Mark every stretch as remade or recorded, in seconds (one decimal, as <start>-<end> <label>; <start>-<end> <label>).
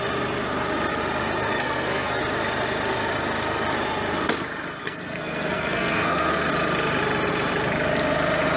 0.0-1.5 recorded; 1.5-2.2 remade; 2.2-4.8 recorded; 4.8-6.5 remade; 6.5-8.6 recorded